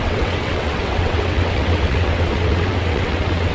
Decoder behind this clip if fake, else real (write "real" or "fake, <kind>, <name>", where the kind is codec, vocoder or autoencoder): fake, vocoder, WaveNeXt